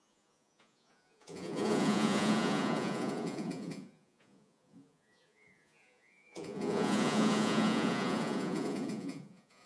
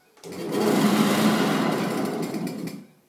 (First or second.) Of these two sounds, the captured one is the second